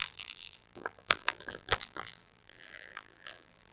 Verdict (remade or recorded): remade